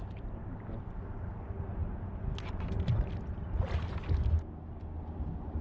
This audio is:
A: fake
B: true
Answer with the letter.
B